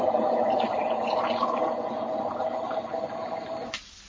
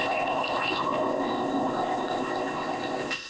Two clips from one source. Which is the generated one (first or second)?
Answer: second